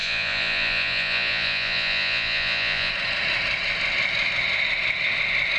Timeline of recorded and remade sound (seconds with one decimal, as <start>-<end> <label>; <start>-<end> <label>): 0.0-2.9 remade; 2.9-5.6 recorded